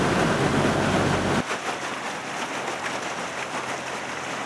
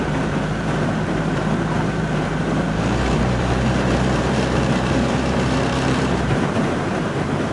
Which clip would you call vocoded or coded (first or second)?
second